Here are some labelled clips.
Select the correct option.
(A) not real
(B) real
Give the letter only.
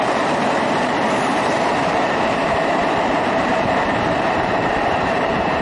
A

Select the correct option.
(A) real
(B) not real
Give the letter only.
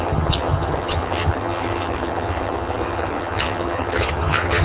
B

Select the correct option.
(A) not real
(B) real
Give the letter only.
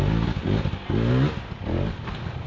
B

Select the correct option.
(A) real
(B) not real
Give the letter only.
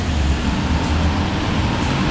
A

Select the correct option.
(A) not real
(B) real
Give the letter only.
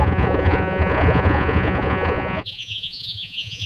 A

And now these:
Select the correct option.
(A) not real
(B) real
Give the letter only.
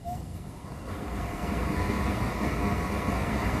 A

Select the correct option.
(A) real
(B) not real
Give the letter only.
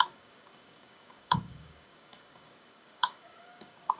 B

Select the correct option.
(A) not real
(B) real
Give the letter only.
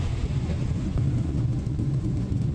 A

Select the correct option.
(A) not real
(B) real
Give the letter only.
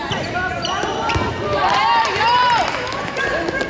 B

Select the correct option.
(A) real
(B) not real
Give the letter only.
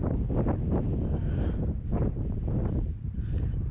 A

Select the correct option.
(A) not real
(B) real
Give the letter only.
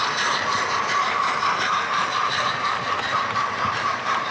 A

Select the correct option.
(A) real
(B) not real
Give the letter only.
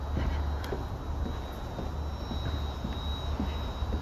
A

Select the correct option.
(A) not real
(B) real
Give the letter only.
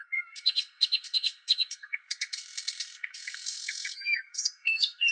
A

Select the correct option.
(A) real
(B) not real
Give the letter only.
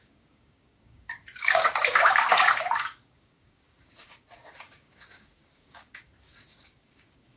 B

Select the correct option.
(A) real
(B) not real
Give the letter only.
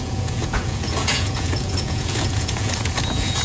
B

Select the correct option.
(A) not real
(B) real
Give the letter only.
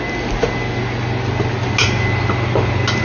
B